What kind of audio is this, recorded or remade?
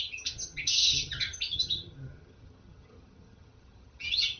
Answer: remade